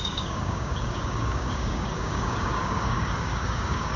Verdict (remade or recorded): remade